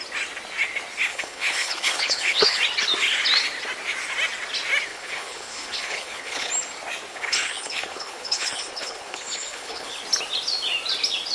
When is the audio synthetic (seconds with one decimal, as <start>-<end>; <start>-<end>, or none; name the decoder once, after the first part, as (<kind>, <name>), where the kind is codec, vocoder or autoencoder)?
1.1-2.6 (codec, HILCodec); 4.9-6.5; 7.1-10.0